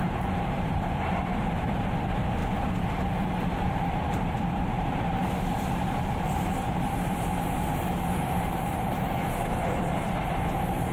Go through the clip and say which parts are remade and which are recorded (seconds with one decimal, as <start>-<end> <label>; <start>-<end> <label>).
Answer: 0.0-5.2 remade; 5.2-6.4 recorded; 6.4-10.9 remade